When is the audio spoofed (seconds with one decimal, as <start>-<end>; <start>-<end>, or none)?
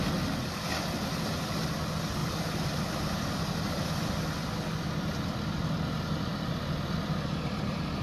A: none